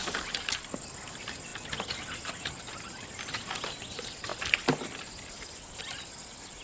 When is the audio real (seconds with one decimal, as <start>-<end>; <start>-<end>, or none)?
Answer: 0.0-6.6